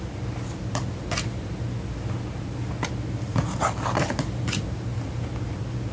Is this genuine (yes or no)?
yes